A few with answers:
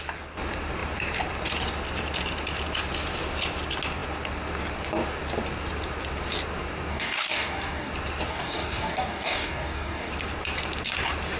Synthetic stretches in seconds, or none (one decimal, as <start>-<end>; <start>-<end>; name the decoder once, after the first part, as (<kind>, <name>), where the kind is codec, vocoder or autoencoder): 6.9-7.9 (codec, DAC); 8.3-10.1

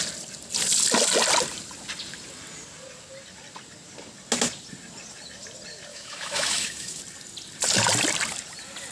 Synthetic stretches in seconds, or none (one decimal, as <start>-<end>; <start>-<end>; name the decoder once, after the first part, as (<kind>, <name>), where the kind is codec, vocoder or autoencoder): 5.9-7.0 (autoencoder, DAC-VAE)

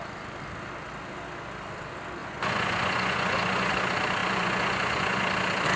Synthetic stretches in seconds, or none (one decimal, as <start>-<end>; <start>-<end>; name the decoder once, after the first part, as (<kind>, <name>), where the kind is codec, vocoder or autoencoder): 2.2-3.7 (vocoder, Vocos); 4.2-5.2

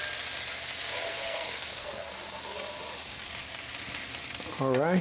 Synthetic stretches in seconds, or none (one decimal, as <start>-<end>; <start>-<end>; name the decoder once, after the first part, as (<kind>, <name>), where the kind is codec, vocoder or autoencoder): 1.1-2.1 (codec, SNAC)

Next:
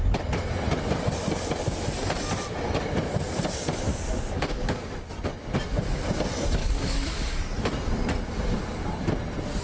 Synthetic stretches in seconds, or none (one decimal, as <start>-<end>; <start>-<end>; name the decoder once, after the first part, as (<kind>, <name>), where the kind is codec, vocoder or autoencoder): 3.9-4.8 (codec, DAC); 6.6-7.3

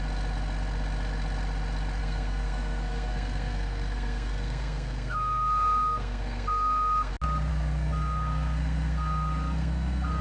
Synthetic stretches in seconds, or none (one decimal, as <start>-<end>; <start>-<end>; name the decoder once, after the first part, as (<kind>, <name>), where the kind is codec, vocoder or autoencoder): 2.0-7.1 (codec, SNAC); 7.5-10.2